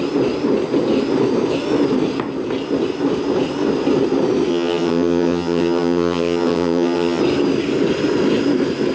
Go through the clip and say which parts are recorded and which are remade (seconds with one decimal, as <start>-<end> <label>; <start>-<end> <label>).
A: 0.0-4.5 recorded; 4.5-7.2 remade; 7.2-8.9 recorded